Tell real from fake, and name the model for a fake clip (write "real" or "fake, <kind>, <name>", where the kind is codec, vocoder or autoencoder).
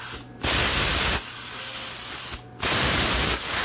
real